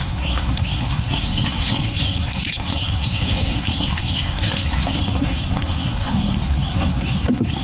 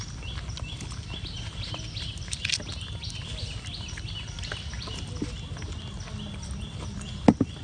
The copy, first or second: first